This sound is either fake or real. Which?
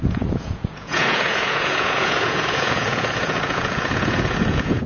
fake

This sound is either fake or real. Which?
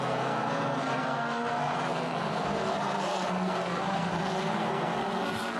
fake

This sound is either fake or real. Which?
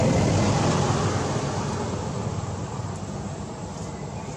real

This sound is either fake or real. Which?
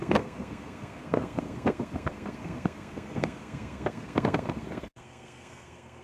fake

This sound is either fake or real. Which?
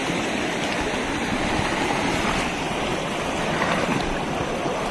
real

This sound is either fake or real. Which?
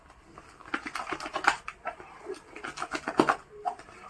real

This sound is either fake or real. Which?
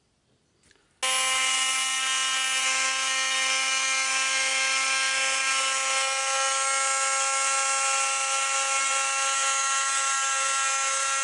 real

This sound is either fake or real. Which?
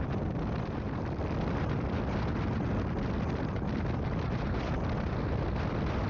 real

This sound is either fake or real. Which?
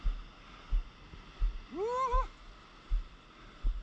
real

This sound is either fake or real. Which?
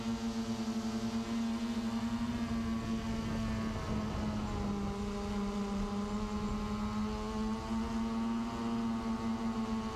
real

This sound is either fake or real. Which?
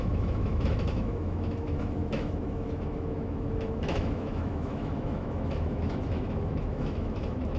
fake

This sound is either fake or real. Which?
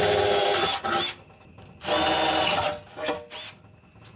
real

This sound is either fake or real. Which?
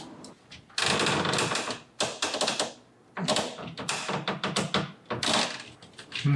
real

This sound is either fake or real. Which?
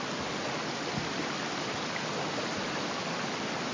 real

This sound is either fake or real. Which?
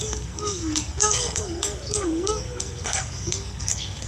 fake